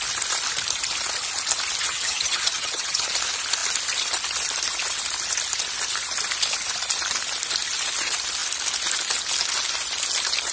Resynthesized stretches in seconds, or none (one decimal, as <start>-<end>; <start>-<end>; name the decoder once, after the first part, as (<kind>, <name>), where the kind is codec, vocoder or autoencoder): 1.8-3.1 (vocoder, HiFi-GAN)